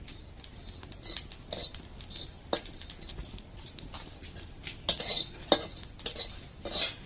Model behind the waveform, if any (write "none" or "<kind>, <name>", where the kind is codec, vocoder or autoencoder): none